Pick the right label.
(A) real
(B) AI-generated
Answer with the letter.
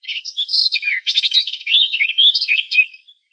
B